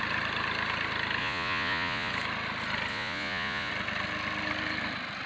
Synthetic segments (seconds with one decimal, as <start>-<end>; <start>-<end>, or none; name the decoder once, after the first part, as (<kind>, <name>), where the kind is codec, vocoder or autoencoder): 1.2-2.1 (vocoder, Vocos); 2.9-3.7